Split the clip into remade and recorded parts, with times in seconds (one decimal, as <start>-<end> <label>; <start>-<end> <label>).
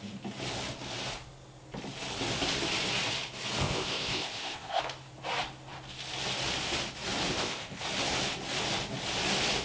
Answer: 0.0-3.6 recorded; 3.6-4.8 remade; 4.8-7.3 recorded; 7.3-7.8 remade; 7.8-9.6 recorded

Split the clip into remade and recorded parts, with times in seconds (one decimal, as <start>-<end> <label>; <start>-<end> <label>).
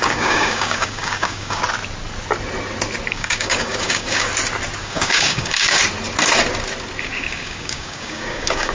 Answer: 0.0-1.6 remade; 1.6-3.1 recorded; 3.1-4.3 remade; 4.3-4.8 recorded; 4.8-5.8 remade; 5.8-7.0 recorded; 7.0-8.7 remade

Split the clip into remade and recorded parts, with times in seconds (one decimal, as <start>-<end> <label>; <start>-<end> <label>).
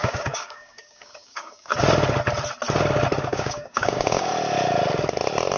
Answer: 0.0-1.7 remade; 1.7-3.2 recorded; 3.2-4.3 remade; 4.3-5.6 recorded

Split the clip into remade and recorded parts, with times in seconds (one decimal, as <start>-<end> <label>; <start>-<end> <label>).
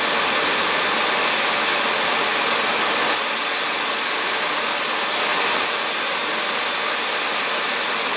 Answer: 0.0-8.2 recorded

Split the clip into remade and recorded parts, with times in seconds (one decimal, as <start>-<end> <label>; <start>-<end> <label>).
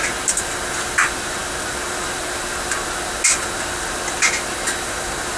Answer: 0.0-5.4 recorded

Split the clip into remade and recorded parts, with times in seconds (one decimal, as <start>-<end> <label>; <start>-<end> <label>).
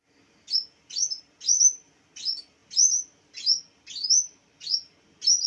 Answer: 0.0-5.5 recorded